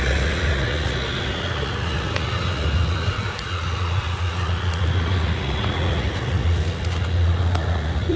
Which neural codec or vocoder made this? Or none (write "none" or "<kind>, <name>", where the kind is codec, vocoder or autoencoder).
vocoder, Vocos